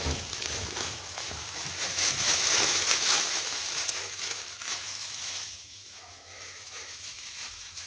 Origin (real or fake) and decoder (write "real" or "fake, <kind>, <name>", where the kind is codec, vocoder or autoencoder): fake, autoencoder, DAC-VAE